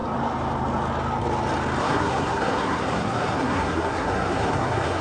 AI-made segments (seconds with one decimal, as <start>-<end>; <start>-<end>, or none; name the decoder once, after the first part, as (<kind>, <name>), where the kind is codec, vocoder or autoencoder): 1.8-5.0 (codec, SNAC)